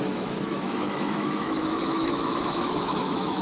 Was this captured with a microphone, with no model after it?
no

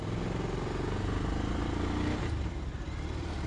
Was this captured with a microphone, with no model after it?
yes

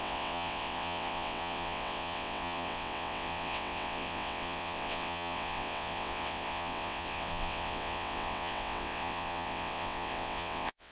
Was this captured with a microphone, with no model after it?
no